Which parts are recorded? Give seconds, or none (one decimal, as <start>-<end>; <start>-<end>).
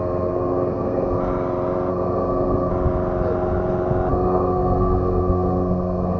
1.2-1.9; 2.7-4.1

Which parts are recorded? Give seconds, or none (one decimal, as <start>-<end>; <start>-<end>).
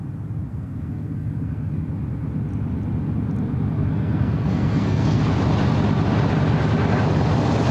0.0-0.5; 1.8-3.9; 5.2-7.7